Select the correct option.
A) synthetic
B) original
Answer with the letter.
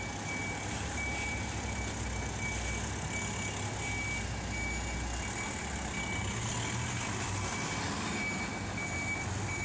B